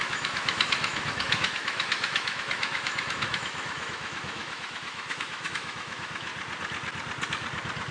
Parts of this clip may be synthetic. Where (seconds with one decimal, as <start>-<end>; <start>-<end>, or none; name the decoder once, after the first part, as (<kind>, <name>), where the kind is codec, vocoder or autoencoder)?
0.0-6.3 (autoencoder, DAC-VAE)